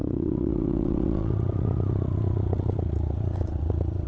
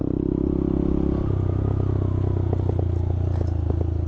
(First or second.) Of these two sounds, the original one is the second